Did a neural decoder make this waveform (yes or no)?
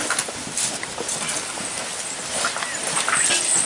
no